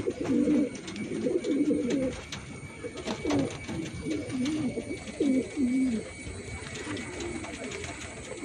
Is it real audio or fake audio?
real